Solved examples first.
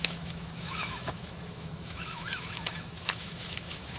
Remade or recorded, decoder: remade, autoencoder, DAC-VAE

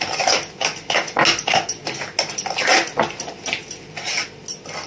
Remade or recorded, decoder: recorded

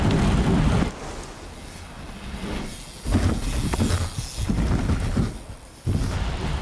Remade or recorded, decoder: recorded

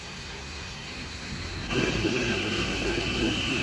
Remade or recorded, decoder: remade, codec, SNAC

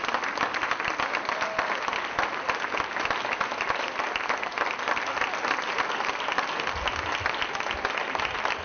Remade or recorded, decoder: recorded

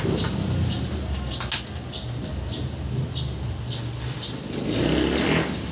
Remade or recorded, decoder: recorded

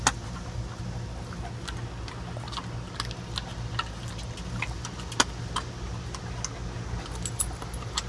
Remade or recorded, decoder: recorded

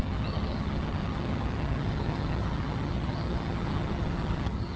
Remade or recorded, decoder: remade, vocoder, HiFi-GAN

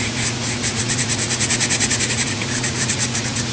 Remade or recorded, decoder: remade, vocoder, Vocos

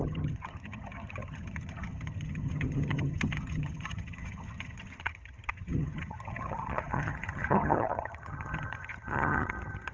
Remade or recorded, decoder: remade, vocoder, HiFi-GAN